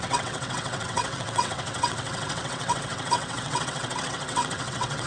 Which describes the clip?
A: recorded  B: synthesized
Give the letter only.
B